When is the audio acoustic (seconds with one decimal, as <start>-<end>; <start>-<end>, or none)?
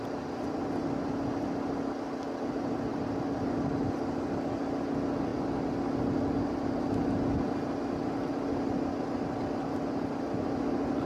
0.0-11.1